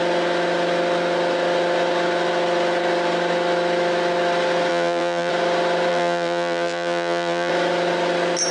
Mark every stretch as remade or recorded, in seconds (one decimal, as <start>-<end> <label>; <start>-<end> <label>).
0.0-4.7 recorded; 4.7-5.3 remade; 5.3-5.9 recorded; 5.9-7.5 remade; 7.5-8.5 recorded